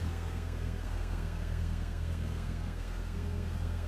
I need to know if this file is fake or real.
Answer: fake